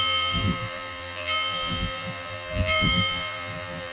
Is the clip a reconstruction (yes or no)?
yes